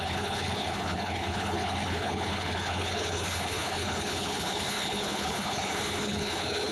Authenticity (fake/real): fake